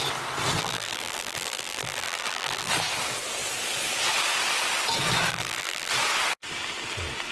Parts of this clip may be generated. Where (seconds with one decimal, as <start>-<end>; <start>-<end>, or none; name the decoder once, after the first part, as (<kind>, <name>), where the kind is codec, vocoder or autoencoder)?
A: 0.6-2.7 (vocoder, BigVGAN v2); 5.3-5.9